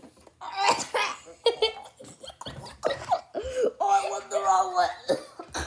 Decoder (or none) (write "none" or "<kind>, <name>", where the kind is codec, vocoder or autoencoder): none